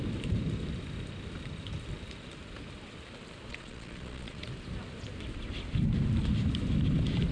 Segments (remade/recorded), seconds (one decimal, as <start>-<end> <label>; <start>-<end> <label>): 0.0-3.5 recorded; 3.5-4.4 remade; 4.4-7.3 recorded